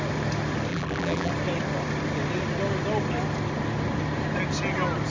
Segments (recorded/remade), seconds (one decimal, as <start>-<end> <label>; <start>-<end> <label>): 0.0-0.7 recorded; 0.7-1.3 remade; 1.3-5.1 recorded